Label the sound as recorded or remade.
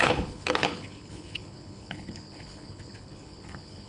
remade